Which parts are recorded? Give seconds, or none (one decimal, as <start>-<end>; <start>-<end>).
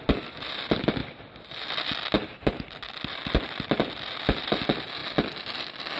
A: 0.0-6.0